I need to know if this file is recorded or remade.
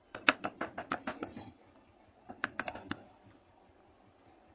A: recorded